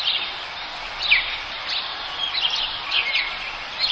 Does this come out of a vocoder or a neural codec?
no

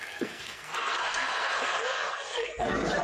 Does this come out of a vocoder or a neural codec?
yes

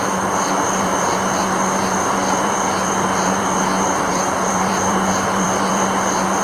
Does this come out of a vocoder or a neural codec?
yes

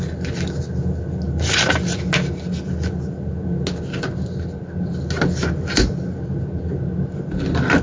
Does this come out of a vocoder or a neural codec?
no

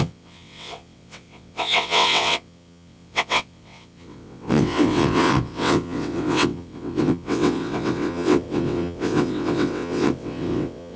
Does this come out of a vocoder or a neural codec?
yes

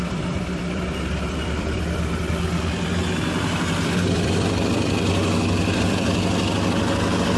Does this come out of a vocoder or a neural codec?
yes